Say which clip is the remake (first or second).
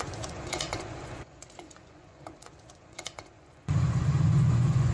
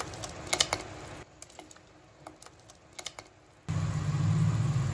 first